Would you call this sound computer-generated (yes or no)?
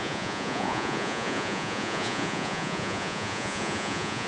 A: yes